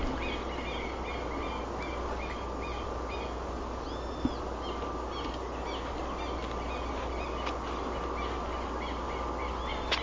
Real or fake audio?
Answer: real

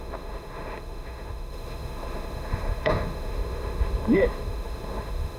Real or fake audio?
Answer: fake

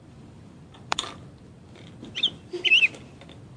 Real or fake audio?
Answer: fake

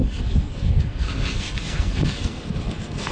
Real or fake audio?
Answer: fake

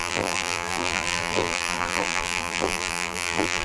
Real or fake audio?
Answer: fake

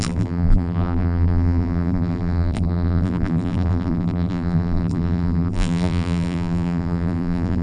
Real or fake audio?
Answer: fake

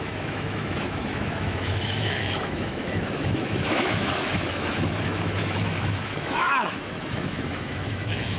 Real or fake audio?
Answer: fake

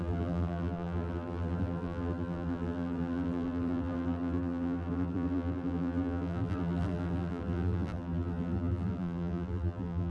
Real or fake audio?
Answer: fake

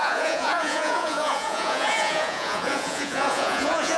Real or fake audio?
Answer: fake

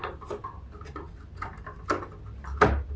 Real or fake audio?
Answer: real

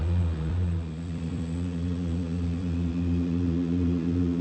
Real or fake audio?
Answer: fake